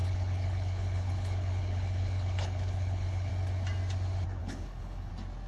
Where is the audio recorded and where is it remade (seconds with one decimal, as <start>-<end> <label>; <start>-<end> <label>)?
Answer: 0.0-3.3 remade; 3.3-4.4 recorded; 4.4-5.1 remade; 5.1-5.5 recorded